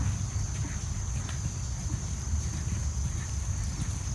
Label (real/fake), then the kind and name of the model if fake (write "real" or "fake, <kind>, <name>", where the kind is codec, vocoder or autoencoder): real